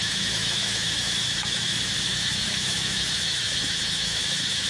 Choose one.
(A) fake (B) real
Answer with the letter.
A